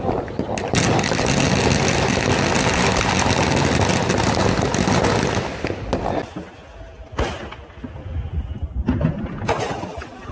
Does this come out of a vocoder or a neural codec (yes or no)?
no